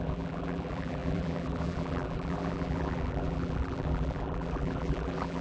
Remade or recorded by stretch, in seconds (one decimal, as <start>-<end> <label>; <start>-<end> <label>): 0.0-5.4 remade